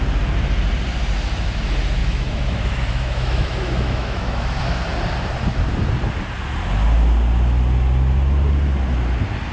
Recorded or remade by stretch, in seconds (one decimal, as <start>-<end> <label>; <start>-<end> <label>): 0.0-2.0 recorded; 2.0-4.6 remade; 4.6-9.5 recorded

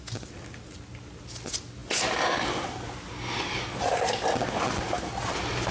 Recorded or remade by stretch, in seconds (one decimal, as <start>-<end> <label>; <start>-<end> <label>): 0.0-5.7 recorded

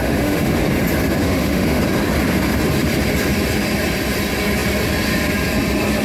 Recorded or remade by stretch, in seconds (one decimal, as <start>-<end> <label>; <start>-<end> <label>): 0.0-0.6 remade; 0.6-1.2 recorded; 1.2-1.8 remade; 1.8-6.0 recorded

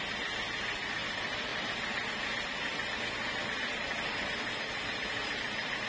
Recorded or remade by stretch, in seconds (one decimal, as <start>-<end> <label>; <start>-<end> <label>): 0.0-5.9 recorded

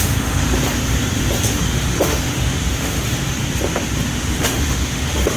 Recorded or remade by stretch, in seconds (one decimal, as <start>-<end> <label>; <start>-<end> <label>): 0.0-0.4 remade; 0.4-1.6 recorded; 1.6-3.2 remade; 3.2-4.1 recorded; 4.1-5.4 remade